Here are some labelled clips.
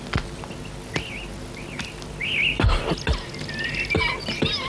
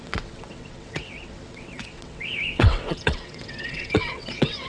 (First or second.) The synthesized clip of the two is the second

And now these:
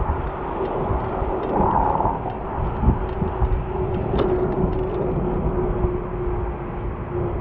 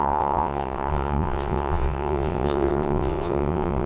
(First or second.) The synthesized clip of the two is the second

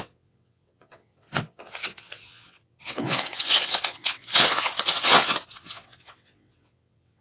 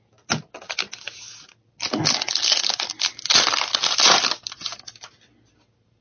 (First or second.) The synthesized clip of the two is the first